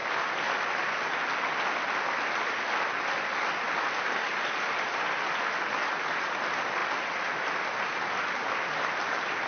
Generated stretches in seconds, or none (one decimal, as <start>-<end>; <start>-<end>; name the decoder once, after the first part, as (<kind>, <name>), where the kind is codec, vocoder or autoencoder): none